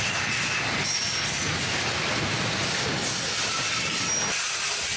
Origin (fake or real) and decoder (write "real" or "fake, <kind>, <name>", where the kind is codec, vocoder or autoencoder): real